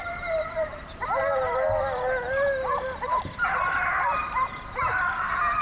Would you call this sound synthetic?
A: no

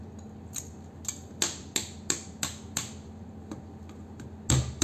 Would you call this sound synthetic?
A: no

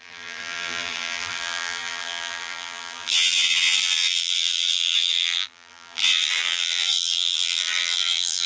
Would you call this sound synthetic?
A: yes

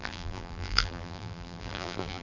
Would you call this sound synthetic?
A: yes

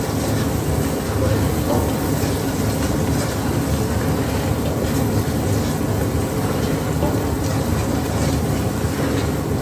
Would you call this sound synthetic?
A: no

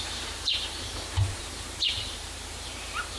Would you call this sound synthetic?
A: yes